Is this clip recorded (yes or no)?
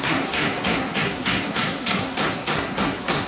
no